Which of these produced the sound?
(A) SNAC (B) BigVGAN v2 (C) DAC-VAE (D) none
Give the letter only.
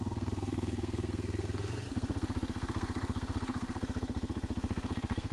A